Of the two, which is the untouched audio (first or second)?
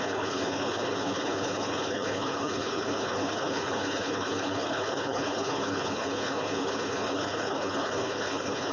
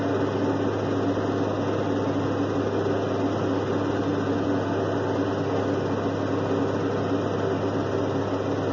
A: second